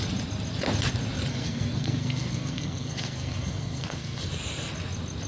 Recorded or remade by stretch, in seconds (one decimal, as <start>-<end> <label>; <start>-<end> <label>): 0.0-1.3 recorded; 1.3-4.3 remade; 4.3-5.3 recorded